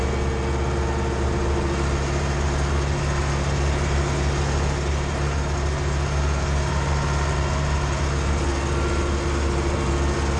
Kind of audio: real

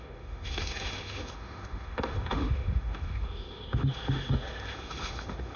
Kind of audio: fake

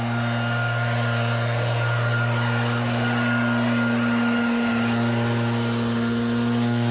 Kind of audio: real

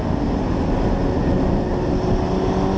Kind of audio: real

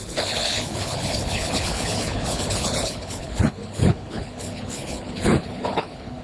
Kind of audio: fake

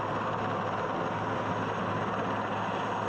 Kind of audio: real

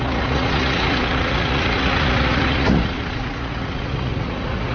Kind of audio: fake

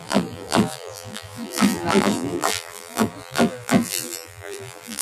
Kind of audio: fake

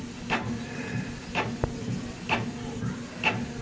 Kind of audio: real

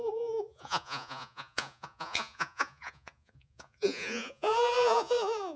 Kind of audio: fake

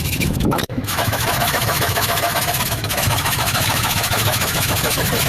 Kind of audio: fake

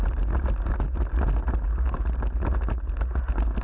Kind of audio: real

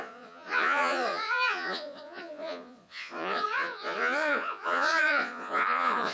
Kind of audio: fake